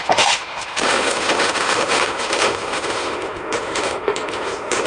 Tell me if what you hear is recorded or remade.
remade